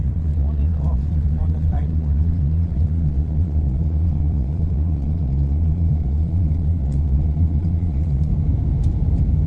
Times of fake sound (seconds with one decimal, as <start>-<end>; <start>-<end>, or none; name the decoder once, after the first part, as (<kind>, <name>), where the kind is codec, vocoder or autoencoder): 0.0-8.3 (vocoder, Vocos)